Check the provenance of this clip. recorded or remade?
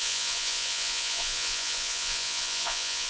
remade